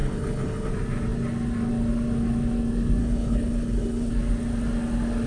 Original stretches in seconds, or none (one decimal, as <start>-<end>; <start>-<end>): 0.7-3.0; 4.1-5.3